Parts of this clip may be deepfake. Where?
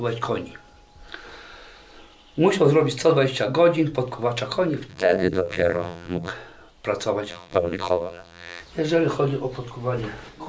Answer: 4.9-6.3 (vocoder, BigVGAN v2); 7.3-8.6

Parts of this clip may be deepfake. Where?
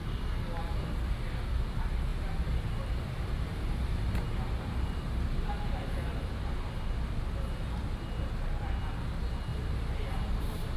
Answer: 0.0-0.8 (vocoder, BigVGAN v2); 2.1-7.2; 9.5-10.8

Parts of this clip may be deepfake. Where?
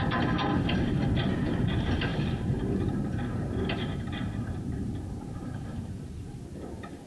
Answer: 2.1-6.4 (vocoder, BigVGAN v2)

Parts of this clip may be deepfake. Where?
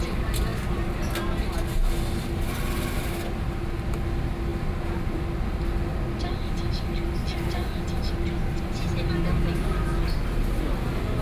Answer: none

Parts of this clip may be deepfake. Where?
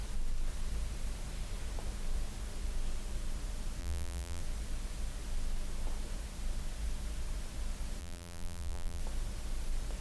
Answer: 3.8-4.4 (vocoder, BigVGAN v2); 8.0-9.0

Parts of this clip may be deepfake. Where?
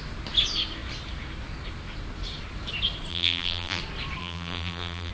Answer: 3.1-3.8 (vocoder, BigVGAN v2); 4.2-5.1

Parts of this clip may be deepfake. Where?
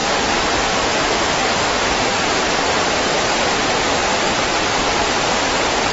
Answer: 0.5-5.9 (vocoder, BigVGAN v2)